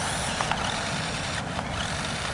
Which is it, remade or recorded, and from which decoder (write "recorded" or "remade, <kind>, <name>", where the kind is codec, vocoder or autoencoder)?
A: recorded